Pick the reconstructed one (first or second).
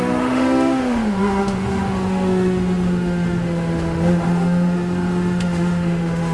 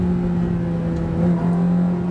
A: first